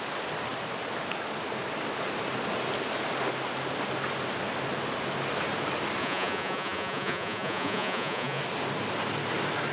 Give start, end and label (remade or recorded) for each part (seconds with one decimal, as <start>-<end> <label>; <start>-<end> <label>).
0.0-6.0 recorded; 6.0-8.4 remade; 8.4-9.7 recorded